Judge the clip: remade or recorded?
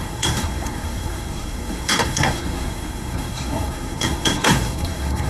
remade